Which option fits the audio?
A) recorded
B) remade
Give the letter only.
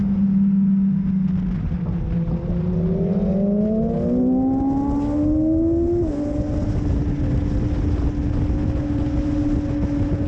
A